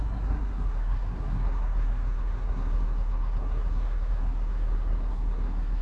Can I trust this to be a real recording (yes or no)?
no